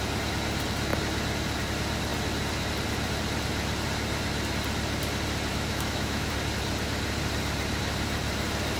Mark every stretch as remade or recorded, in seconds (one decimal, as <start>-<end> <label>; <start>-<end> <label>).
0.0-5.5 recorded; 5.5-6.3 remade; 6.3-8.8 recorded